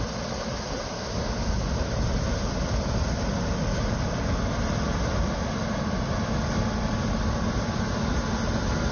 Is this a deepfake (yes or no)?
no